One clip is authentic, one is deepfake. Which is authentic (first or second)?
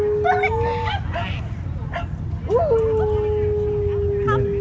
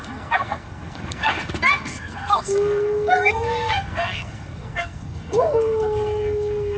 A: first